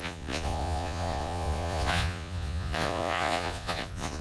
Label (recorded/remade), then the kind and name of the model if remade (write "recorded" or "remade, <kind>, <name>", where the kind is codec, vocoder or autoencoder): remade, vocoder, Vocos